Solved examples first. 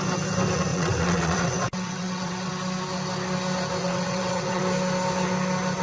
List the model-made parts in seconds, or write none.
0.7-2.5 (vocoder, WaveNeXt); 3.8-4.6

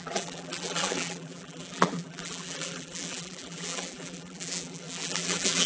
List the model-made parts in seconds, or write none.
0.0-5.7 (vocoder, BigVGAN v2)

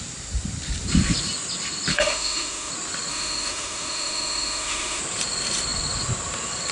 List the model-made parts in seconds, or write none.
1.9-2.7 (autoencoder, DAC-VAE); 3.1-5.0

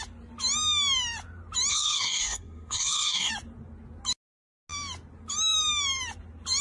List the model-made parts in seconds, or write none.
1.7-3.3 (codec, SNAC)

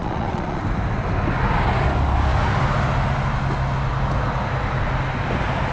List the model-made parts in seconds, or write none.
0.0-0.6 (vocoder, Vocos)

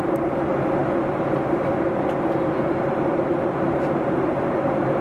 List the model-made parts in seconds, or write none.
none